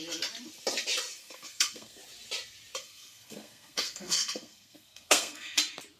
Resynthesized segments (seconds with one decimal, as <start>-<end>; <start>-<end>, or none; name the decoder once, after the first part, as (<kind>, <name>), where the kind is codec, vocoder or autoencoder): 1.2-2.0 (codec, SNAC); 2.8-5.6